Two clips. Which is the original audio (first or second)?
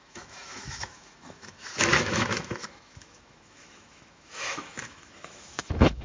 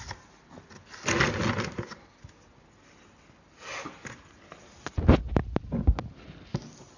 second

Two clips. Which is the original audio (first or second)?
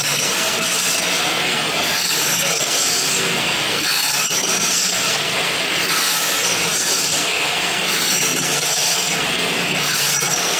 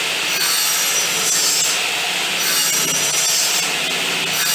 second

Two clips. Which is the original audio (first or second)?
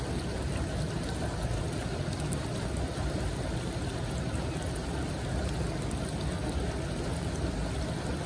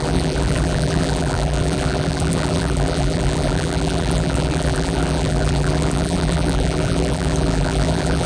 first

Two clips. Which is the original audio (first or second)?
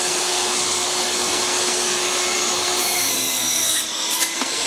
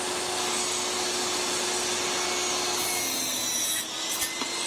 second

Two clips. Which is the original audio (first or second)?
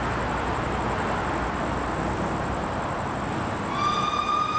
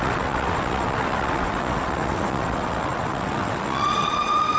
first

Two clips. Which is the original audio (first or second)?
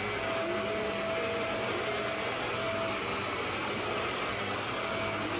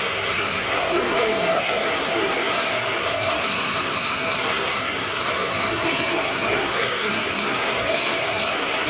first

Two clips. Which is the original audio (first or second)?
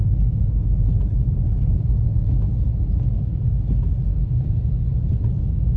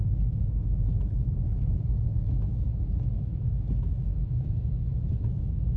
first